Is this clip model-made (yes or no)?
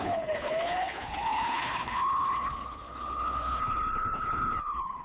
yes